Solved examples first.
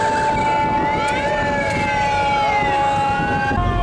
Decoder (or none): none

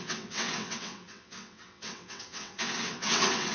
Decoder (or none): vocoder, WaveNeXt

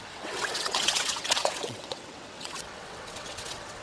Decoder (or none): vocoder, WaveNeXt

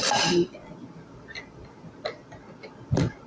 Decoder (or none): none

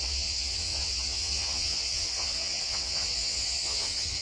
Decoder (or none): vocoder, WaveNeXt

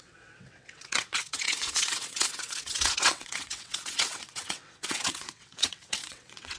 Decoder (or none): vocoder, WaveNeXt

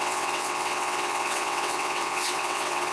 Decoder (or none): vocoder, WaveNeXt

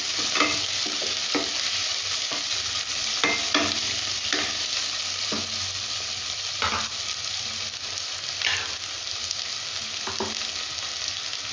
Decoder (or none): none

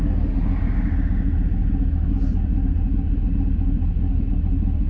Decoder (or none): none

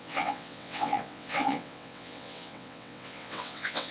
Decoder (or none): vocoder, WaveNeXt